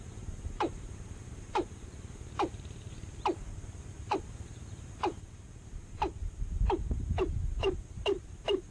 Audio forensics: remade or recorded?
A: remade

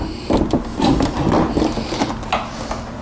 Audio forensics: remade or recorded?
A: recorded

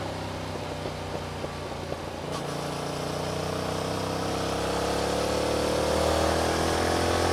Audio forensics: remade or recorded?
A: recorded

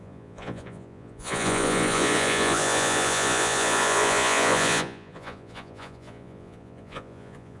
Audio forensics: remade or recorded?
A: remade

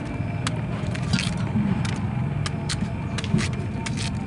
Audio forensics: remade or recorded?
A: recorded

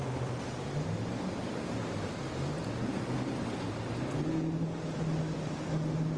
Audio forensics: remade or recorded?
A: recorded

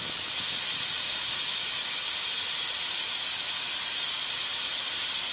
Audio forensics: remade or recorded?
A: recorded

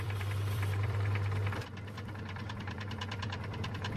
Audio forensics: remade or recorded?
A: remade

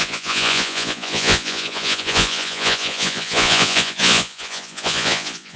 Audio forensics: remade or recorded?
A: remade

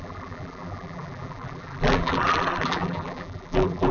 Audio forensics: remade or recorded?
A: remade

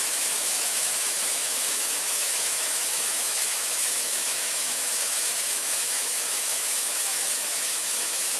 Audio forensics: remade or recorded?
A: remade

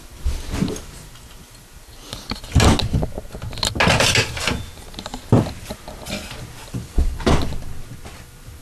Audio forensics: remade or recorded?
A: recorded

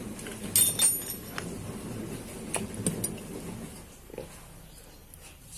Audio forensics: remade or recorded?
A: recorded